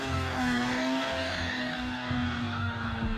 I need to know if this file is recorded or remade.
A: remade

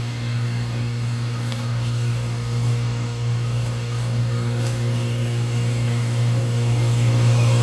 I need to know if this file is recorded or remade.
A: remade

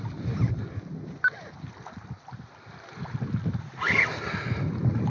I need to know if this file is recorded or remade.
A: recorded